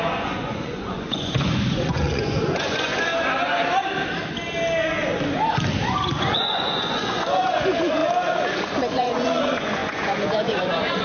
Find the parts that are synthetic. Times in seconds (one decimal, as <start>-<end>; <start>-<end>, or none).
0.0-3.1; 6.2-8.0; 8.9-11.0